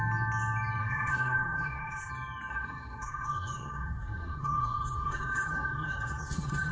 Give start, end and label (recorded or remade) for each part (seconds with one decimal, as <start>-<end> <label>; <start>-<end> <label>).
0.0-0.8 recorded; 0.8-2.1 remade; 2.1-2.5 recorded; 2.5-6.7 remade